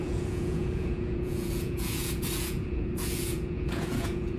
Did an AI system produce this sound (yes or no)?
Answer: yes